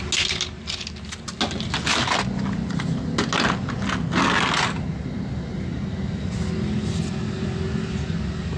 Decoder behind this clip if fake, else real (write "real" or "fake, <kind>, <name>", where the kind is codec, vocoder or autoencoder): real